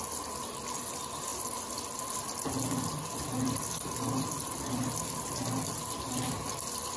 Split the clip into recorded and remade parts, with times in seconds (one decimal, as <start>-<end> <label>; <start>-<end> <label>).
0.0-7.0 recorded